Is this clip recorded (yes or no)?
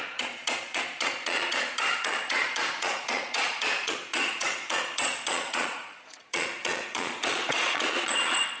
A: no